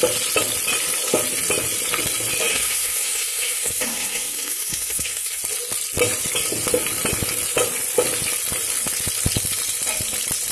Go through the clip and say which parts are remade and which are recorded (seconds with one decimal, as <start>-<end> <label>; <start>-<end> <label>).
0.0-2.5 recorded; 2.5-5.4 remade; 5.4-10.5 recorded